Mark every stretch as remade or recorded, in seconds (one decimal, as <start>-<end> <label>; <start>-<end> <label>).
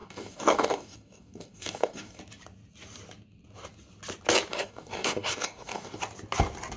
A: 0.0-2.2 remade; 2.2-4.5 recorded; 4.5-6.0 remade; 6.0-6.8 recorded